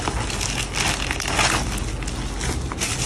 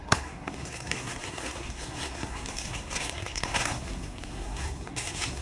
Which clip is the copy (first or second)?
second